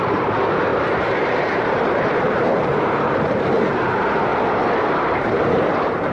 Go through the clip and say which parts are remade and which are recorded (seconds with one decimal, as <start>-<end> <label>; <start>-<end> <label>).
0.0-4.3 remade; 4.3-5.1 recorded; 5.1-6.1 remade